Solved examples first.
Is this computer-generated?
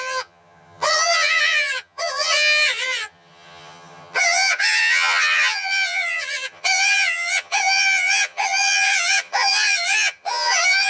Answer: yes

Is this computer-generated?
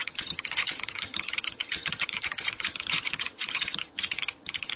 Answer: yes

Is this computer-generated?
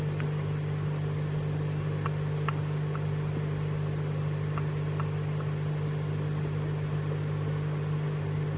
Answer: no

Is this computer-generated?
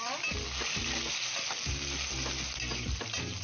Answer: no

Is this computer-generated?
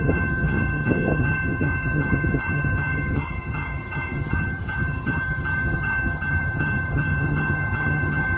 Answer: yes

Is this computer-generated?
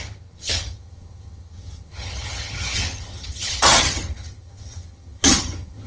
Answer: yes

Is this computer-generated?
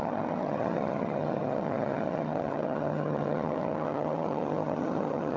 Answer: yes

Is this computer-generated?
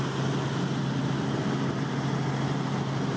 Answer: no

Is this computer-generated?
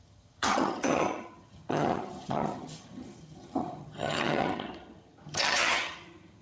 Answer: yes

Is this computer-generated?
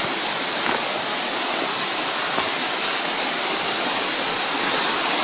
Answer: no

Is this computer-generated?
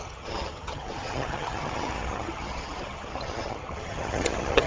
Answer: yes